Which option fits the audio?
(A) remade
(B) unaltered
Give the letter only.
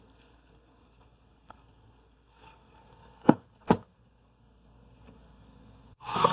A